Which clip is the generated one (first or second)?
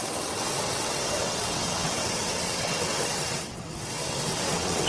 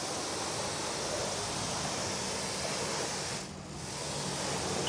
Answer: first